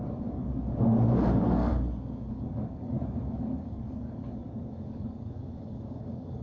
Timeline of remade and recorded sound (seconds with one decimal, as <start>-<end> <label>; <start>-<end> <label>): 0.0-1.7 remade; 1.7-2.3 recorded; 2.3-6.4 remade